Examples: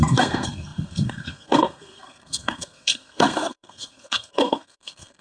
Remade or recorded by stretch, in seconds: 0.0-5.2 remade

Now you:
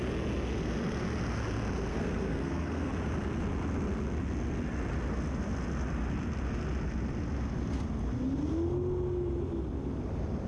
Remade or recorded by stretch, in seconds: 0.0-1.9 recorded; 1.9-2.9 remade; 2.9-10.5 recorded

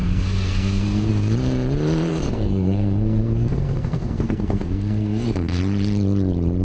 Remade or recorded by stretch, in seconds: 0.0-1.1 remade; 1.1-2.1 recorded; 2.1-5.6 remade; 5.6-6.6 recorded

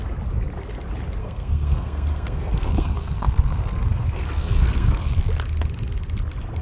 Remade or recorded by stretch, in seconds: 0.0-1.2 recorded; 1.2-5.2 remade; 5.2-6.6 recorded

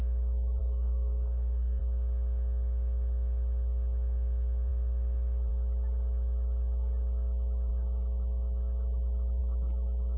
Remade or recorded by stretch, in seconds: 0.0-0.6 recorded; 0.6-1.8 remade; 1.8-10.2 recorded

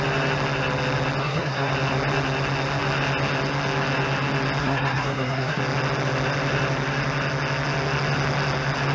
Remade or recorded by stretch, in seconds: 0.0-1.2 recorded; 1.2-1.7 remade; 1.7-4.6 recorded; 4.6-5.6 remade; 5.6-8.9 recorded